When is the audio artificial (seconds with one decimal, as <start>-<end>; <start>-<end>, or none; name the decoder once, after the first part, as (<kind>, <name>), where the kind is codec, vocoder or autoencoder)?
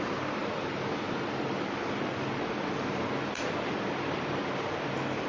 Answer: none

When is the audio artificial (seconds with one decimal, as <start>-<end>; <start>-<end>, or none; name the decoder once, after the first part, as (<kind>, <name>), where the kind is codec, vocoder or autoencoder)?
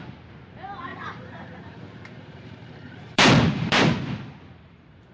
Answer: 0.9-4.0 (vocoder, BigVGAN v2)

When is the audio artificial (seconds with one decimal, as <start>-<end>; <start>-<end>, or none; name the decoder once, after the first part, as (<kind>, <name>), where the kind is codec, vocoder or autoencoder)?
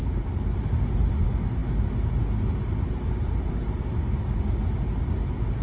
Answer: none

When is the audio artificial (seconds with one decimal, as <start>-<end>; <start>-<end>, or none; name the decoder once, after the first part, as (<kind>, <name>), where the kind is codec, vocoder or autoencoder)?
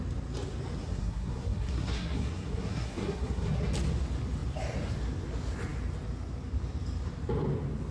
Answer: 0.8-3.7 (codec, SNAC)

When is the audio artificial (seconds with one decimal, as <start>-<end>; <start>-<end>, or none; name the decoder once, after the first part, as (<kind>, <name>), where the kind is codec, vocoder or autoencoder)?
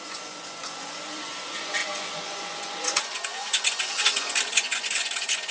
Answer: 0.0-5.5 (vocoder, Vocos)